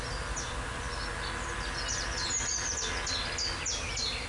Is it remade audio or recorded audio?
recorded